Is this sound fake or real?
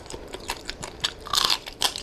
fake